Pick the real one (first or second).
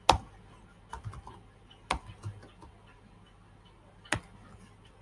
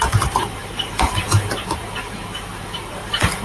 first